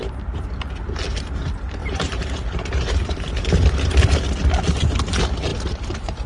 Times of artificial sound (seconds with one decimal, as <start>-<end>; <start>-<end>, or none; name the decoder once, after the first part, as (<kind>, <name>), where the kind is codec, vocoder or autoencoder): 1.8-4.1 (vocoder, BigVGAN v2); 5.5-6.3